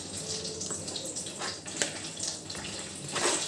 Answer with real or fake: real